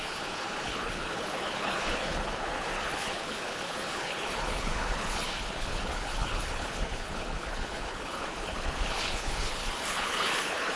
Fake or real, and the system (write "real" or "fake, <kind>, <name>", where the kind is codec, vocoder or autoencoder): fake, codec, HILCodec